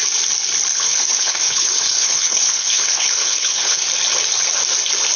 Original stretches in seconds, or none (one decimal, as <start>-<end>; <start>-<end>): 0.0-0.7; 3.8-5.2